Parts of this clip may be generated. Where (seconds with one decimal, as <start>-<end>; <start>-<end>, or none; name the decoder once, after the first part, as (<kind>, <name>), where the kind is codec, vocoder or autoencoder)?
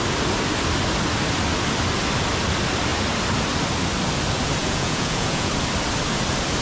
4.6-5.5 (vocoder, Vocos)